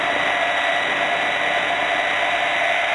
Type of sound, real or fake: real